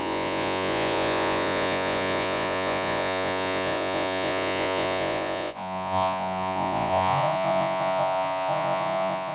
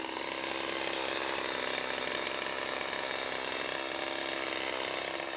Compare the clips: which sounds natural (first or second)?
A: second